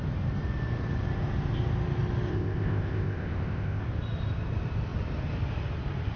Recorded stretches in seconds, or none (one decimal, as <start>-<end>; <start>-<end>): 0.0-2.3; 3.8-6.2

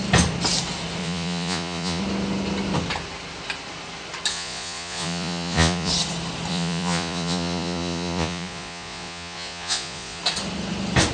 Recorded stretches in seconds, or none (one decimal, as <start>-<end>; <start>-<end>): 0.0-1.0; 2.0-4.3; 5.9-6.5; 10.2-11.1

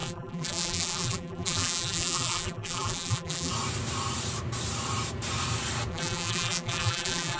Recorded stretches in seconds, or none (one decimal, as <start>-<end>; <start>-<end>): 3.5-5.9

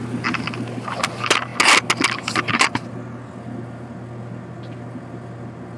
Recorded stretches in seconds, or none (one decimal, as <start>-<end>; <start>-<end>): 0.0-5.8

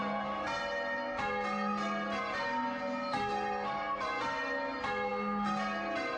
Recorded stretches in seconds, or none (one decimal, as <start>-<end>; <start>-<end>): 0.0-6.2